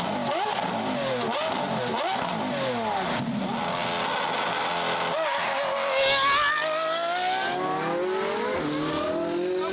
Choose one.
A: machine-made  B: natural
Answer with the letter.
B